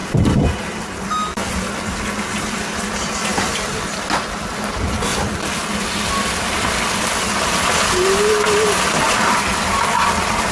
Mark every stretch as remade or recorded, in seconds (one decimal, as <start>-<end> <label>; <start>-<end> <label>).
0.0-10.5 recorded